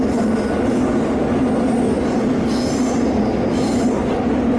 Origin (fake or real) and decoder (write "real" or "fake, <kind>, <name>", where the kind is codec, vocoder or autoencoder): real